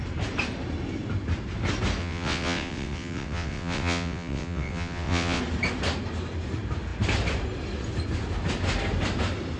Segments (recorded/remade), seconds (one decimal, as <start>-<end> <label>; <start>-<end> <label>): 0.0-2.0 recorded; 2.0-5.4 remade; 5.4-9.6 recorded